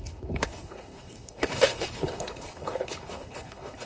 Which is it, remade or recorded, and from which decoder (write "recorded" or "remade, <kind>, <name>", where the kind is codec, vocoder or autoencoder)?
remade, codec, HILCodec